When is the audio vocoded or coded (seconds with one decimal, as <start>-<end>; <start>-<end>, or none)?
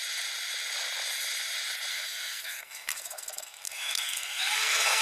1.9-5.0